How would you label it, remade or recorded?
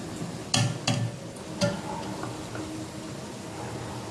recorded